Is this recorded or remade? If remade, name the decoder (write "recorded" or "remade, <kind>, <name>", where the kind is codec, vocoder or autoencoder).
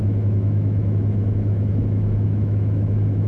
remade, autoencoder, DAC-VAE